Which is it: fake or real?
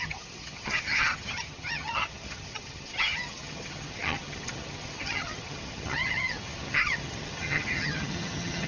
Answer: fake